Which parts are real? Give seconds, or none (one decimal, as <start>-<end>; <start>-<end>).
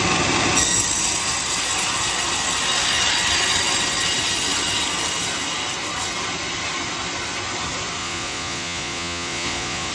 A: 0.0-8.0